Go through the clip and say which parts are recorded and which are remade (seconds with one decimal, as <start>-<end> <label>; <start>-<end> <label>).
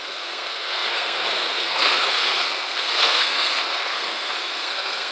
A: 0.0-5.1 remade